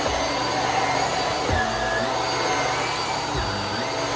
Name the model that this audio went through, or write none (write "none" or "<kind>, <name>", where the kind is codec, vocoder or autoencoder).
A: none